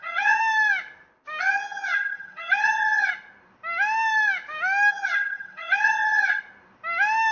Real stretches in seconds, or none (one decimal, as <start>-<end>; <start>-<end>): 0.4-1.4; 3.1-4.9; 6.4-7.3